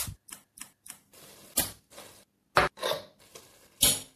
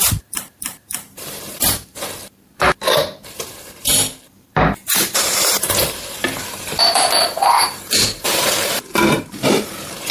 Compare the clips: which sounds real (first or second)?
first